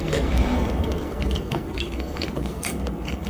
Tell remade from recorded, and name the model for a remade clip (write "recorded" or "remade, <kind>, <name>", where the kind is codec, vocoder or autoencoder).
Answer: remade, codec, SNAC